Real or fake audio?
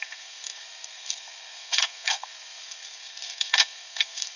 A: fake